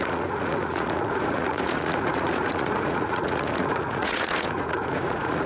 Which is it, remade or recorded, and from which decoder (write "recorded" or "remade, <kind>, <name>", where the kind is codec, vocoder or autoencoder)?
remade, vocoder, Vocos